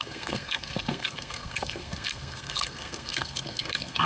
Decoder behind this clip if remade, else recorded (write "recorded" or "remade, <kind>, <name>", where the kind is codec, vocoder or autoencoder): remade, codec, SNAC